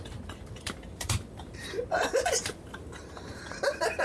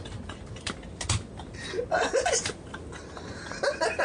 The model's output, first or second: first